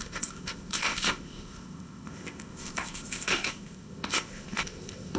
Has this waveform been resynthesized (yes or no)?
yes